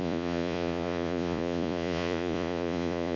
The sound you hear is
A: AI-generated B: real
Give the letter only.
A